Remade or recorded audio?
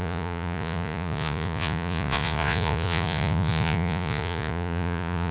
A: remade